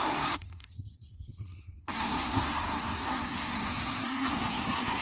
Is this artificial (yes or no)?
yes